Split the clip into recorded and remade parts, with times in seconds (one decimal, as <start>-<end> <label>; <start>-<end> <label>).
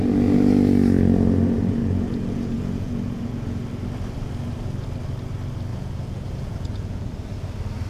0.0-1.8 recorded; 1.8-3.6 remade; 3.6-5.7 recorded; 5.7-7.1 remade; 7.1-7.9 recorded